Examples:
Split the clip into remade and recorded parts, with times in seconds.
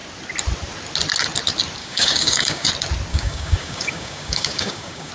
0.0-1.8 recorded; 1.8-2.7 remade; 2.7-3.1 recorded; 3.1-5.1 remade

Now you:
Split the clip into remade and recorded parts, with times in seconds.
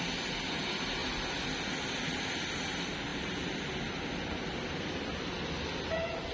0.0-6.3 recorded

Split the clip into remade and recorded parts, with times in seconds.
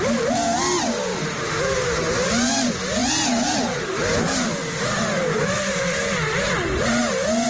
0.0-1.1 recorded; 1.1-2.1 remade; 2.1-7.5 recorded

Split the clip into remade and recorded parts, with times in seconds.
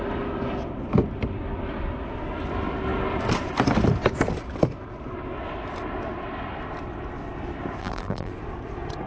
0.0-7.8 recorded; 7.8-8.3 remade; 8.3-9.1 recorded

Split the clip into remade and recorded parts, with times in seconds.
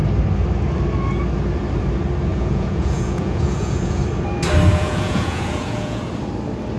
0.0-2.3 recorded; 2.3-4.0 remade; 4.0-4.7 recorded; 4.7-6.0 remade; 6.0-6.8 recorded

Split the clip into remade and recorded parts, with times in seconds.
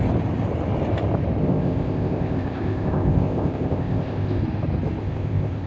0.0-1.4 recorded; 1.4-4.4 remade; 4.4-5.0 recorded; 5.0-5.7 remade